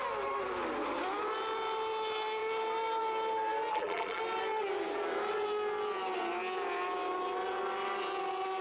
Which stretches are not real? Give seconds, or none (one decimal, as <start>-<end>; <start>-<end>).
3.7-4.2